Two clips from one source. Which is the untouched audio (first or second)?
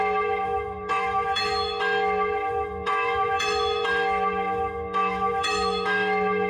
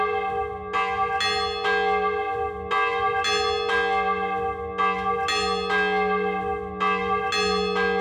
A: second